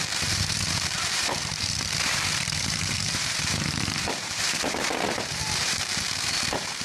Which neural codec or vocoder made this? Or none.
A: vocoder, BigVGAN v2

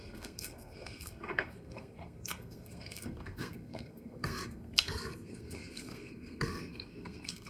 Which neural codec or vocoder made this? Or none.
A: codec, SNAC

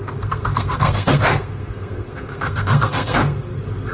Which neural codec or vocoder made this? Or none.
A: codec, SNAC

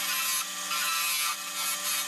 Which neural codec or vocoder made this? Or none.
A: none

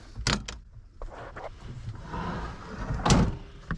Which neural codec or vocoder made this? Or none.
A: none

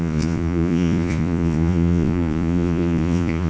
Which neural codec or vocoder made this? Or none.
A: vocoder, Vocos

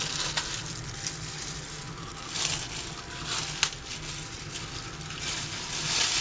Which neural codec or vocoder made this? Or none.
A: none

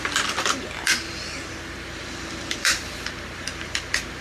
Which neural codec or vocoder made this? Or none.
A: vocoder, BigVGAN v2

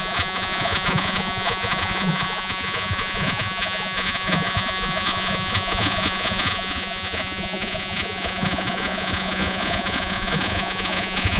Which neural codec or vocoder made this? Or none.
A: vocoder, Vocos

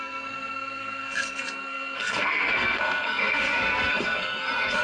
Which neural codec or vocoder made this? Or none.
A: codec, SNAC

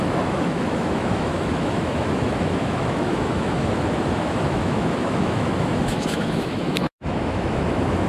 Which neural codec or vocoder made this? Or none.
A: autoencoder, DAC-VAE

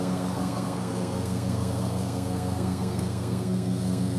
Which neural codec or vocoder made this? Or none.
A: codec, SNAC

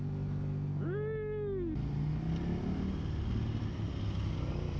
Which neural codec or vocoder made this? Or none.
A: none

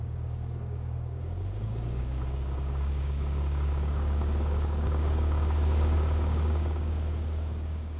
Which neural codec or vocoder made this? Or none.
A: codec, DAC